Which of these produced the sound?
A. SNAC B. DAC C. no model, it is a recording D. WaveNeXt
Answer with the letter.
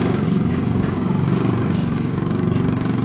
B